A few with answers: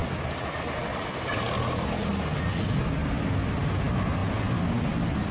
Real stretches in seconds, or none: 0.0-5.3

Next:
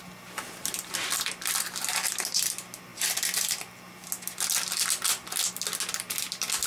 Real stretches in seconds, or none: 0.0-6.7

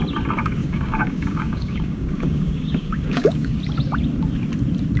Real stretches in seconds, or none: 0.0-0.6; 3.6-5.0

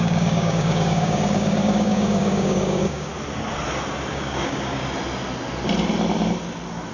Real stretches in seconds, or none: 3.1-4.1; 4.8-6.9